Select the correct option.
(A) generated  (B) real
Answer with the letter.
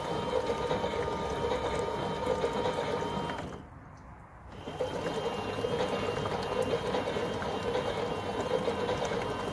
B